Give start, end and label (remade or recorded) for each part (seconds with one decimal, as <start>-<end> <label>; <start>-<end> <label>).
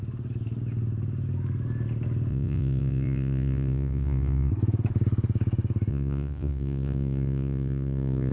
0.0-2.3 recorded; 2.3-4.5 remade; 4.5-5.9 recorded; 5.9-8.3 remade